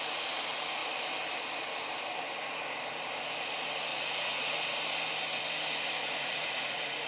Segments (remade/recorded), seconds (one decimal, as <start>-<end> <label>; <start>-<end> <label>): 0.0-3.9 recorded; 3.9-4.5 remade; 4.5-6.0 recorded; 6.0-7.1 remade